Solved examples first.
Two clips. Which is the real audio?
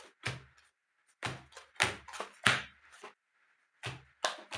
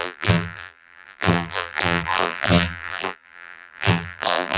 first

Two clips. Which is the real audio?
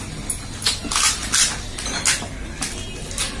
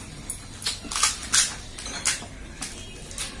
first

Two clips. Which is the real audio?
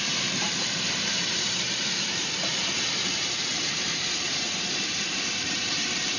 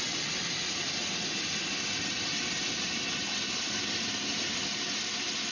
second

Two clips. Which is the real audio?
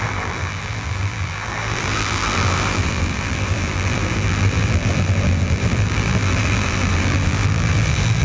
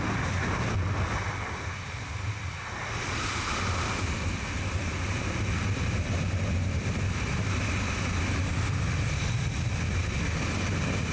second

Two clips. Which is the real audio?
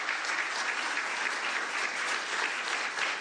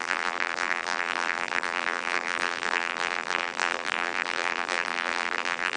first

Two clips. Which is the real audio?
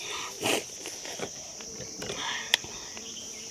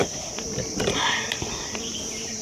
first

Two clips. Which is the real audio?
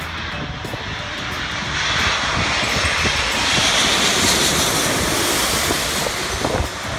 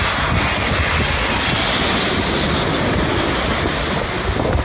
second